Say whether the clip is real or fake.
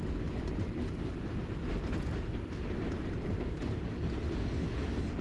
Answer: real